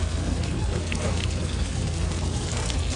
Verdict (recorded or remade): remade